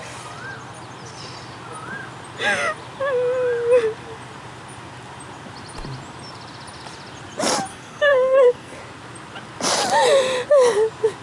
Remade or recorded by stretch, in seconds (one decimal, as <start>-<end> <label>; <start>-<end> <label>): 0.0-7.7 recorded; 7.7-8.8 remade; 8.8-11.2 recorded